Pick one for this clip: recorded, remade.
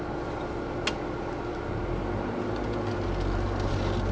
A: recorded